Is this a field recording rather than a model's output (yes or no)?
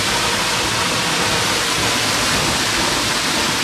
yes